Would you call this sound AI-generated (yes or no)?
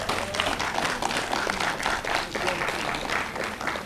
no